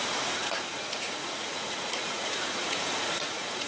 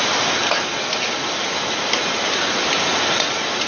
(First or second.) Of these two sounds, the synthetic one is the first